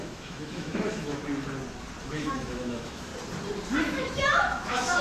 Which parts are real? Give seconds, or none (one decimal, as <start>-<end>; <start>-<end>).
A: 1.2-2.0; 3.1-3.8